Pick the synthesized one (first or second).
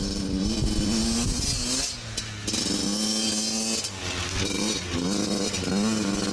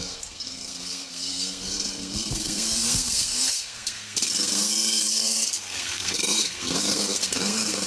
second